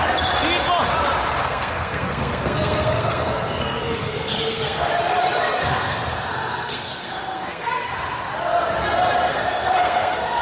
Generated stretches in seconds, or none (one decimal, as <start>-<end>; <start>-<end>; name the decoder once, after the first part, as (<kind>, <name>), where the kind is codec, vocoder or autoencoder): 1.4-4.9 (codec, SNAC); 5.6-7.9; 9.3-10.4